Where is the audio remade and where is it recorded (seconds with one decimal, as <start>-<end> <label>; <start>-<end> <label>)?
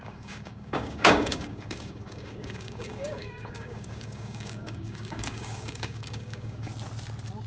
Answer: 0.0-6.7 remade; 6.7-7.5 recorded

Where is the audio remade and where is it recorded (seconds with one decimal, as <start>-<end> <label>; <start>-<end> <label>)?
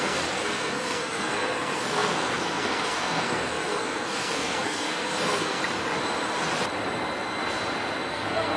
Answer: 0.0-5.6 remade; 5.6-8.1 recorded; 8.1-8.6 remade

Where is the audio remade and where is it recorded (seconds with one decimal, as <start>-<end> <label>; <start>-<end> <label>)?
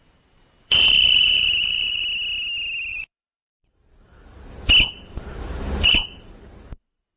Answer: 0.0-2.0 remade; 2.0-2.9 recorded; 2.9-4.3 remade; 4.3-4.9 recorded; 4.9-7.2 remade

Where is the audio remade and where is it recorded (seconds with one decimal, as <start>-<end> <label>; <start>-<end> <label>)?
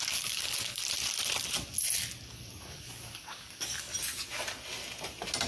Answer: 0.0-0.8 remade; 0.8-2.3 recorded; 2.3-3.9 remade; 3.9-5.5 recorded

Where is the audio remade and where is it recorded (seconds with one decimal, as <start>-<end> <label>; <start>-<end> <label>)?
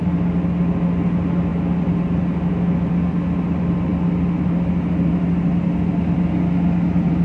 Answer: 0.0-7.2 recorded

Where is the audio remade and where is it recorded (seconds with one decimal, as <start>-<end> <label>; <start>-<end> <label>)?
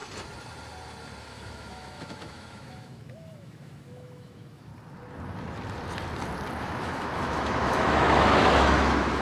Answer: 0.0-1.2 recorded; 1.2-4.7 remade; 4.7-6.6 recorded; 6.6-9.2 remade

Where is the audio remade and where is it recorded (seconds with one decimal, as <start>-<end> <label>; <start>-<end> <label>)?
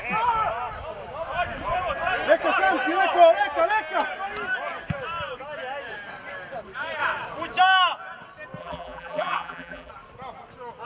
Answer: 0.0-8.6 recorded; 8.6-9.9 remade; 9.9-10.9 recorded